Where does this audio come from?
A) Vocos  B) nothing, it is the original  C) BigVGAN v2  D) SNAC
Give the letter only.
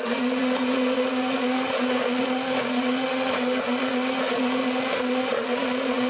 A